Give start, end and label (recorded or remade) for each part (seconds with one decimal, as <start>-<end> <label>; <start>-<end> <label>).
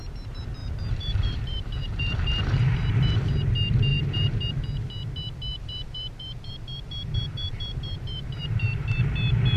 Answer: 0.0-0.6 recorded; 0.6-2.6 remade; 2.6-3.9 recorded; 3.9-4.5 remade; 4.5-5.5 recorded; 5.5-9.0 remade; 9.0-9.6 recorded